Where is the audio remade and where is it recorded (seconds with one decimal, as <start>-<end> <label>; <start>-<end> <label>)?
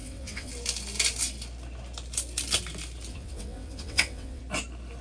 0.0-0.5 remade; 0.5-3.1 recorded; 3.1-4.4 remade; 4.4-5.0 recorded